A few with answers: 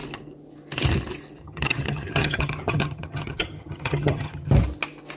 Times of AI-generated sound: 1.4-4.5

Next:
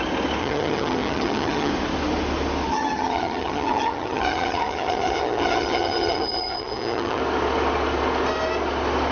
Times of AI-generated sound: 0.4-1.7; 2.7-7.2

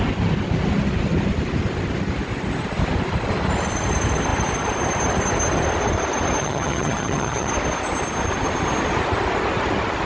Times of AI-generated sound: 6.4-7.5

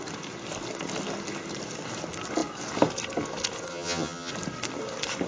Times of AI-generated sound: 3.7-4.3

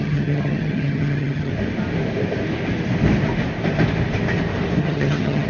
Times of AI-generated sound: 0.0-1.5; 4.8-5.5